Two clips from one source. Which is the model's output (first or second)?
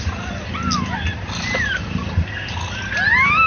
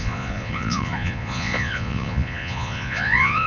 second